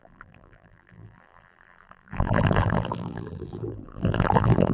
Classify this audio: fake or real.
fake